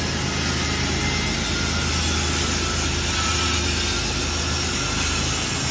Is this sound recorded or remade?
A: recorded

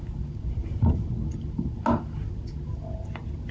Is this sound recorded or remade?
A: recorded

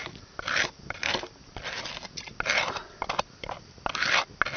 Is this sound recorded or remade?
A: recorded